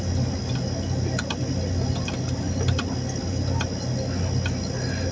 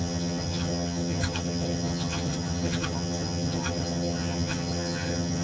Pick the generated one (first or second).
second